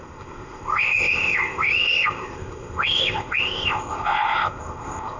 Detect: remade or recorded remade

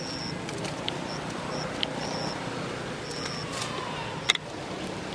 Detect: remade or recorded recorded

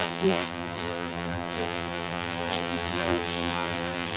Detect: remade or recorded remade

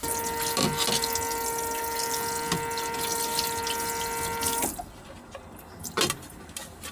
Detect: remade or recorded recorded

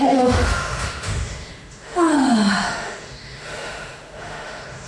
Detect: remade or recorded remade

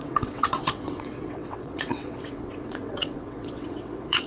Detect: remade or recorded remade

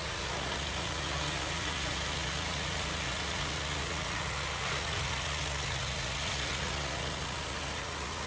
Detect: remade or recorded remade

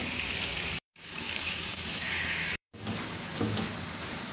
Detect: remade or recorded remade